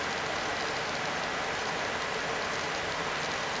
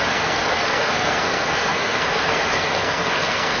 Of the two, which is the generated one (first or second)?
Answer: second